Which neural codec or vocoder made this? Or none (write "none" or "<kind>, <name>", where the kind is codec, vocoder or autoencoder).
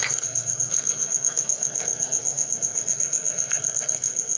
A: codec, SNAC